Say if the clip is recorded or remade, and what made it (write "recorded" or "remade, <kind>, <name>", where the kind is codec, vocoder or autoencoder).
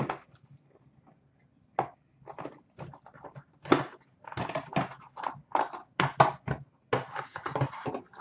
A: recorded